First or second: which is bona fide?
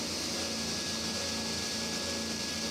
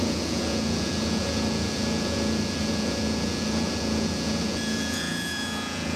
first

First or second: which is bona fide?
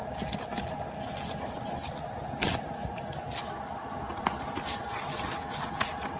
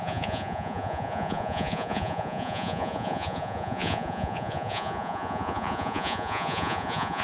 first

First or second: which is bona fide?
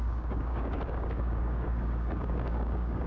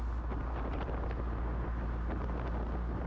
second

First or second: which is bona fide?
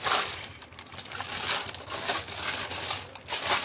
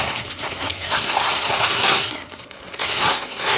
first